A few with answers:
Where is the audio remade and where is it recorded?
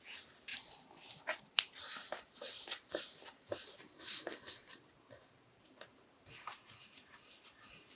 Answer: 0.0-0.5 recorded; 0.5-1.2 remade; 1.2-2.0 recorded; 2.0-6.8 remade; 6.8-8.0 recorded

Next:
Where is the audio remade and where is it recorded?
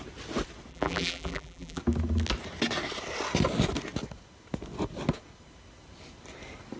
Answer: 0.0-0.7 recorded; 0.7-1.8 remade; 1.8-6.8 recorded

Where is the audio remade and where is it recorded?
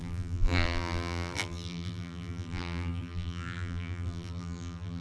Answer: 0.0-5.0 remade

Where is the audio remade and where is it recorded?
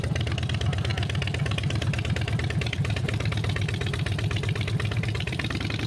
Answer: 0.0-0.9 remade; 0.9-1.4 recorded; 1.4-5.9 remade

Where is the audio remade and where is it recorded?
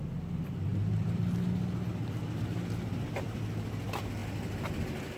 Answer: 0.0-5.2 recorded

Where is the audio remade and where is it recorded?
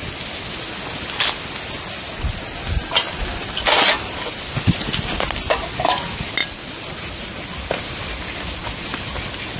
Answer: 0.0-3.3 recorded; 3.3-5.6 remade; 5.6-9.6 recorded